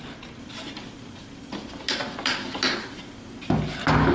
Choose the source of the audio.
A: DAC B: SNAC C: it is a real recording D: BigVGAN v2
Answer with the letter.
C